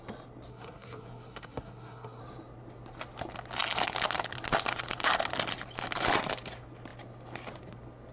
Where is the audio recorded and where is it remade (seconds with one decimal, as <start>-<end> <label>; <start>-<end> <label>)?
0.0-0.5 recorded; 0.5-2.2 remade; 2.2-8.1 recorded